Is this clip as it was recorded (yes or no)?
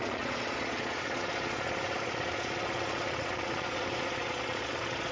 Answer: no